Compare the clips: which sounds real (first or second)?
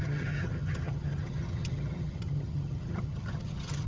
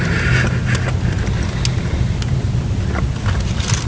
second